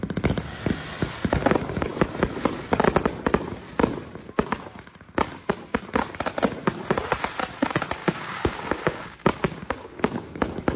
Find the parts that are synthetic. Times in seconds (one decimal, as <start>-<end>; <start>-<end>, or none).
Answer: 8.0-10.8